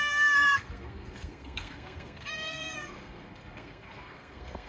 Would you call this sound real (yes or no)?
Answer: no